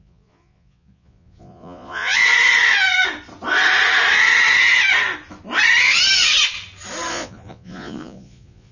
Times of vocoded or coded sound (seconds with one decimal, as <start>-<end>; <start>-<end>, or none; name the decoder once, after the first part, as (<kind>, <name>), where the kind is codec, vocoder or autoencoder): 0.0-2.2 (vocoder, Vocos); 7.1-8.7